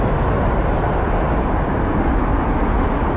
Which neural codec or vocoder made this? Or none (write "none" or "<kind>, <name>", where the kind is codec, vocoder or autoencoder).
none